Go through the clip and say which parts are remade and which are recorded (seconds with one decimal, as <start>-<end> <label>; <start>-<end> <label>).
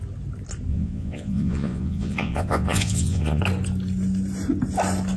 0.0-0.7 recorded; 0.7-3.4 remade; 3.4-5.2 recorded